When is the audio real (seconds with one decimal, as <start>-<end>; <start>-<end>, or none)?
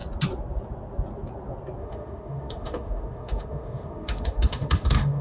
0.0-1.8